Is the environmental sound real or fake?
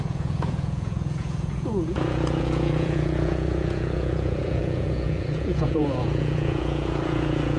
fake